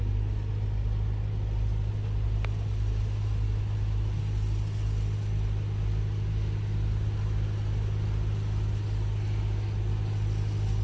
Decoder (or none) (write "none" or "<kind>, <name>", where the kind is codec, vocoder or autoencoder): none